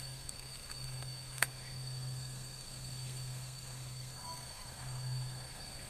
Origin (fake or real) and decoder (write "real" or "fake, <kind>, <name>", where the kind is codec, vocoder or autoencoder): fake, codec, SNAC